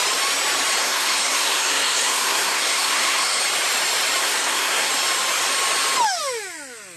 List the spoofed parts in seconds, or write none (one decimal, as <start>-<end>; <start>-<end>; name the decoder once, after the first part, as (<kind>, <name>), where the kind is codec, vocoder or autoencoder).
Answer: 0.8-3.4 (codec, SNAC); 4.2-4.9